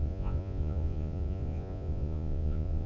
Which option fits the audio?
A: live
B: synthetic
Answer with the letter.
B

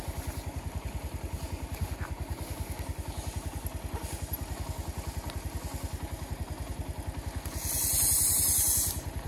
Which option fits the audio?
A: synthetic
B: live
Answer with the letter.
B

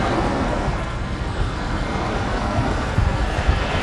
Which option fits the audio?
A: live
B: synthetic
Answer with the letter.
B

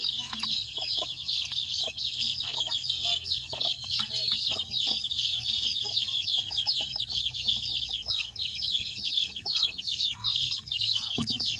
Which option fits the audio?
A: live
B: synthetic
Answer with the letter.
B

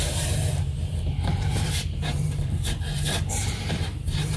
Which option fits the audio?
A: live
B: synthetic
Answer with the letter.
B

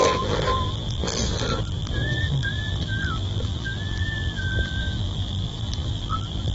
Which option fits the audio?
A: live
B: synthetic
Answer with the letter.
B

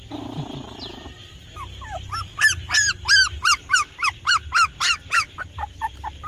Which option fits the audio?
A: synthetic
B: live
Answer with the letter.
B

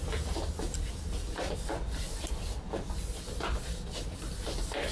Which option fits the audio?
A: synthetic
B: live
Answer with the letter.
B